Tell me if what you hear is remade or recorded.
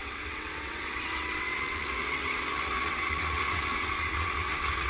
remade